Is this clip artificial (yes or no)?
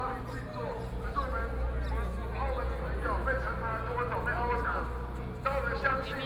no